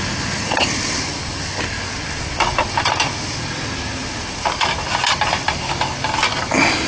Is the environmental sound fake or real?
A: real